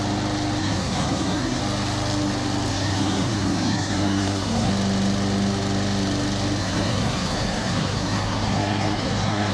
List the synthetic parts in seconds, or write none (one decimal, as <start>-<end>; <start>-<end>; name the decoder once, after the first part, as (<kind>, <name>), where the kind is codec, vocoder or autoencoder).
0.6-1.6 (codec, SNAC); 2.7-4.7; 6.6-9.5